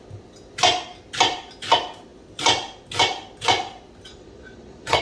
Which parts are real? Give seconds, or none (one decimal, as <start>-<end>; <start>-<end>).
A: 0.0-4.1